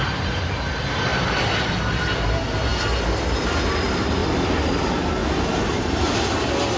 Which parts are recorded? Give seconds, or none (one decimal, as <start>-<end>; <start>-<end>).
0.0-6.8